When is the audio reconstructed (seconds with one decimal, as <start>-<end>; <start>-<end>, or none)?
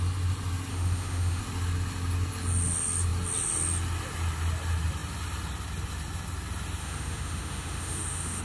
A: 0.7-1.4; 6.8-8.4